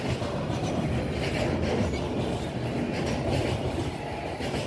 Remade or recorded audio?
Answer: recorded